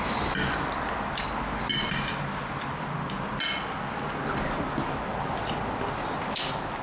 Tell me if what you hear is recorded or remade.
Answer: recorded